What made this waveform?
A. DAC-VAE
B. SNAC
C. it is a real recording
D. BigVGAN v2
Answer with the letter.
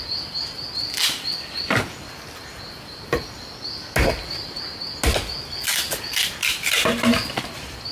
C